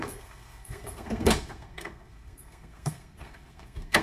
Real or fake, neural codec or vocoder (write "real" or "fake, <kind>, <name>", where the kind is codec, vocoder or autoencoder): fake, codec, SNAC